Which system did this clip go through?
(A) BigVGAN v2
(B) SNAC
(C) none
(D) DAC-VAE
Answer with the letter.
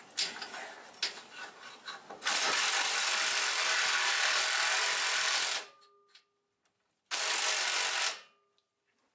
C